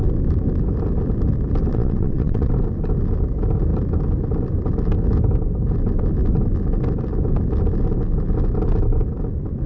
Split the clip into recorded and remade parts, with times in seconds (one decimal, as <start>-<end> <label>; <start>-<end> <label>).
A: 0.0-1.7 recorded; 1.7-2.5 remade; 2.5-9.7 recorded